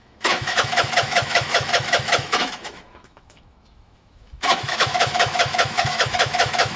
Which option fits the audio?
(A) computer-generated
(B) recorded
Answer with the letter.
A